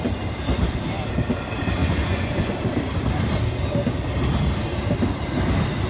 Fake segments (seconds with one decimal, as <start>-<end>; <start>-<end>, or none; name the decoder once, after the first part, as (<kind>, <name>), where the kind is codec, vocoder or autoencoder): 1.8-2.5 (vocoder, Vocos)